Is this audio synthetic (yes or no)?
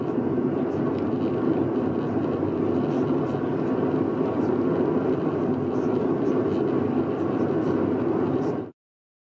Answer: no